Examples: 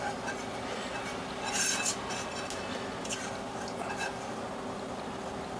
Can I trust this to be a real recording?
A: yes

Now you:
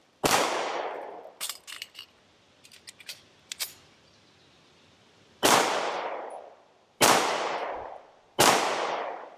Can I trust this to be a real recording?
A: no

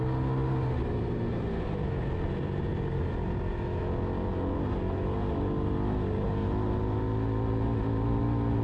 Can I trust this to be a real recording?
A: yes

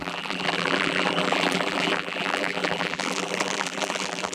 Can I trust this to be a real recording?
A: no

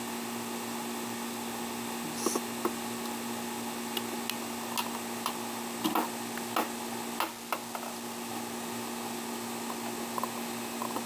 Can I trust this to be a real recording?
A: yes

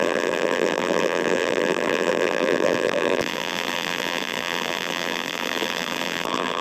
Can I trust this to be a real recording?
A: no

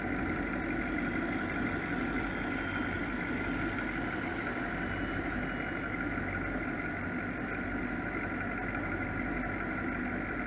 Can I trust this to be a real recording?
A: yes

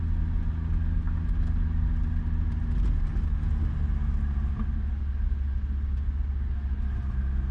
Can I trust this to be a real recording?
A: yes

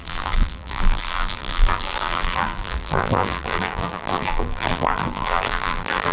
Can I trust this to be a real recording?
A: no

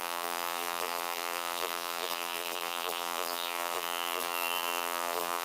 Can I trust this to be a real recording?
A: no